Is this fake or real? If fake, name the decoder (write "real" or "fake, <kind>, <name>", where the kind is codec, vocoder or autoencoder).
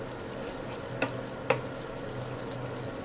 real